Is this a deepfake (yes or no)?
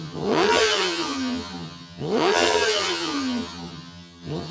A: yes